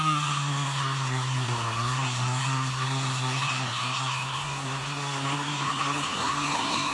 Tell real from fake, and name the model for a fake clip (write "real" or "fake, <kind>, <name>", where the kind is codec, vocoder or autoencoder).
fake, codec, SNAC